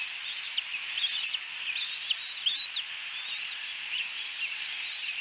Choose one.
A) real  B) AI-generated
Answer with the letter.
A